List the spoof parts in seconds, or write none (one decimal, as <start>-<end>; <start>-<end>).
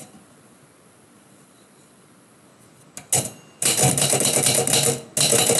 0.0-2.5